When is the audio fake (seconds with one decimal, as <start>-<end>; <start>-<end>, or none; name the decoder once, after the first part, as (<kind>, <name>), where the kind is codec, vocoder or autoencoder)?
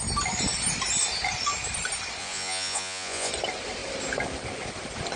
2.2-3.3 (vocoder, Vocos)